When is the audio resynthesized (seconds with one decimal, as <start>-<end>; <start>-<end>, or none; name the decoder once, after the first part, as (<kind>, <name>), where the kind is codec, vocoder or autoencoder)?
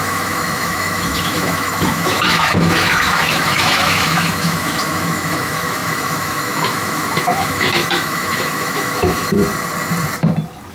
0.0-9.4 (autoencoder, DAC-VAE)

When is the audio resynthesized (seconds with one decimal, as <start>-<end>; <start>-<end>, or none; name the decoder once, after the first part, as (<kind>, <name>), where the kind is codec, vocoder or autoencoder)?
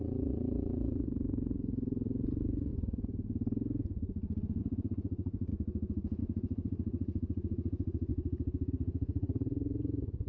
0.0-2.7 (vocoder, Vocos); 4.6-5.5; 6.2-8.1; 8.7-10.3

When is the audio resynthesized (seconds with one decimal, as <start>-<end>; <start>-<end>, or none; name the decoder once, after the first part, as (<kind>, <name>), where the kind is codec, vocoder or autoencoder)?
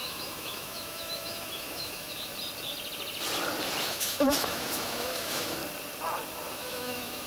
0.0-2.3 (autoencoder, DAC-VAE); 3.8-5.6; 6.5-7.3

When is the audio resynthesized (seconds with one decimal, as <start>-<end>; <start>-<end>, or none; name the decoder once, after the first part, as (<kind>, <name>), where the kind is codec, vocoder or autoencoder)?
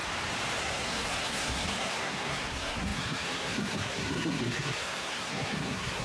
0.6-6.0 (codec, SNAC)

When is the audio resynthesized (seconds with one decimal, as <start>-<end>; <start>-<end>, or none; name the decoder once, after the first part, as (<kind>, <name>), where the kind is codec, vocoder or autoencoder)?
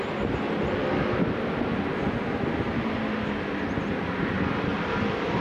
0.0-0.8 (vocoder, BigVGAN v2); 4.0-5.4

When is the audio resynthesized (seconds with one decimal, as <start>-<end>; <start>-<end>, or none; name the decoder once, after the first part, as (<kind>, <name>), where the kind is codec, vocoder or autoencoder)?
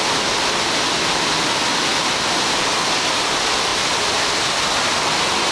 none